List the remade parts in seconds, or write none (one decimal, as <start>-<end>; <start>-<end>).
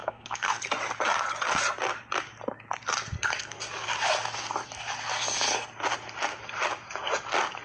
0.0-0.6